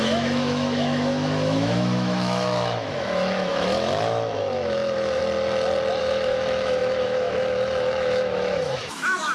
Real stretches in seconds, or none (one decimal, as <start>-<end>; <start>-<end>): 5.2-6.0